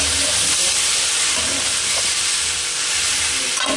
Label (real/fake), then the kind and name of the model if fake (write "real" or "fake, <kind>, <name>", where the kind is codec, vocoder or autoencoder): real